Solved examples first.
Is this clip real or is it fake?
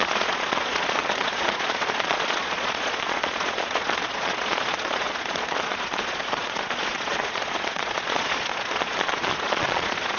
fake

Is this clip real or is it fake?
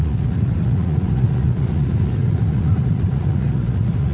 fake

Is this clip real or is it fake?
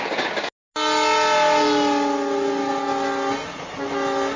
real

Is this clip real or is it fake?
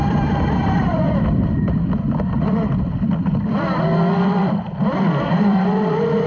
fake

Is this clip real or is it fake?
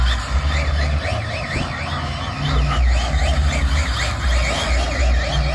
real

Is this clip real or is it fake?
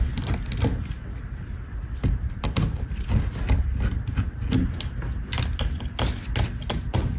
real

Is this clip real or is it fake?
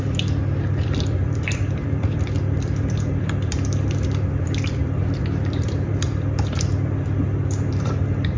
fake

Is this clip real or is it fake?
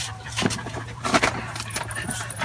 fake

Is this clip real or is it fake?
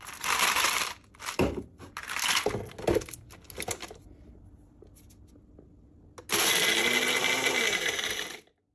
real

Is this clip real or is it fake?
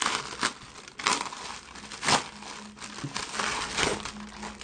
real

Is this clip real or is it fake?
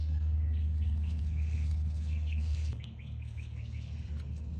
fake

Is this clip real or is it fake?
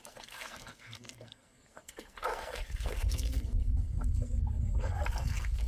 fake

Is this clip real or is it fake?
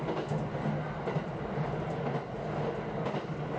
real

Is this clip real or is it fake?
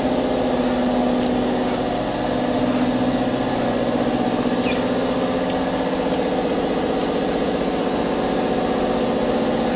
real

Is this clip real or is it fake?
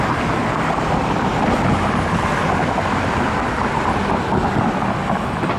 real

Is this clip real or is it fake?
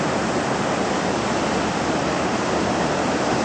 real